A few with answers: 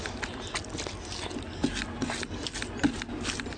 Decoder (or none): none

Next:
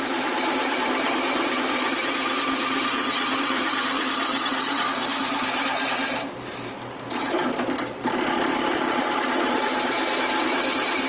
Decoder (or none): vocoder, BigVGAN v2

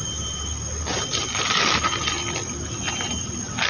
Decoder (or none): none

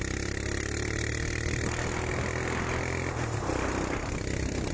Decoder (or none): none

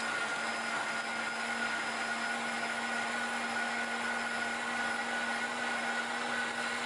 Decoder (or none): none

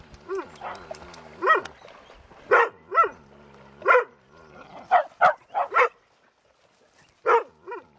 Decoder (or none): none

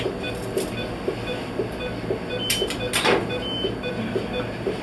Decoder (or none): none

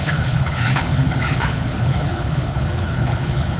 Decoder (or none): codec, HILCodec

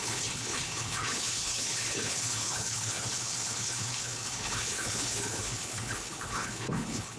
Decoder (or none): codec, HILCodec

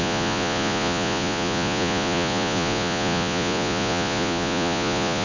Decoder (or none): vocoder, Vocos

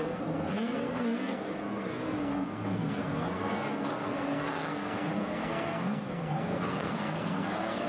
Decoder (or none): codec, SNAC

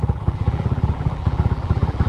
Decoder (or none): vocoder, BigVGAN v2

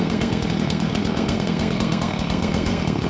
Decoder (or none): codec, SNAC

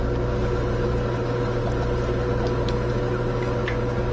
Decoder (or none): none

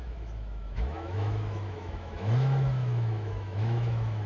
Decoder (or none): autoencoder, DAC-VAE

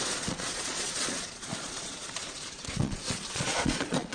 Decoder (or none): vocoder, Vocos